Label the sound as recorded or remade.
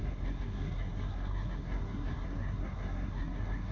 remade